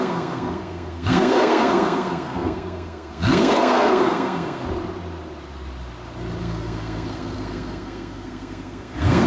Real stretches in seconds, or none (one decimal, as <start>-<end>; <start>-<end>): 4.6-6.4